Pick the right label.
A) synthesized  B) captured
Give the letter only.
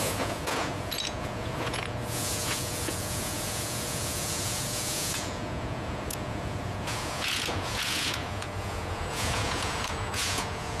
A